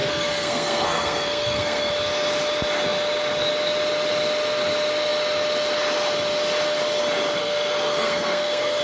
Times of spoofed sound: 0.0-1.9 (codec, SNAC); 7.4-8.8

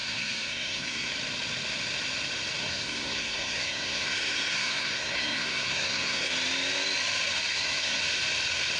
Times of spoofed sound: 0.0-1.1 (codec, SNAC); 2.6-6.3; 7.5-8.0

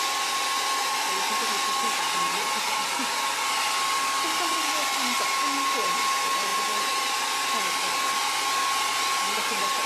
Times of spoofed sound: none